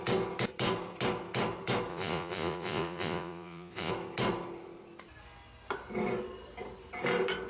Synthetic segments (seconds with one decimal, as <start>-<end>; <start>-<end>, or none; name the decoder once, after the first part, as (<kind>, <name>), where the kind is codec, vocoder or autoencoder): 1.9-3.9 (vocoder, Vocos)